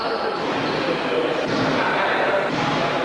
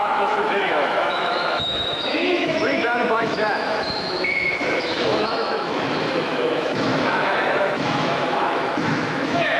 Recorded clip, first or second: first